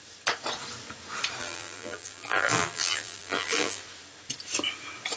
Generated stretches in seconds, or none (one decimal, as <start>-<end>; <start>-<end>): 1.4-3.8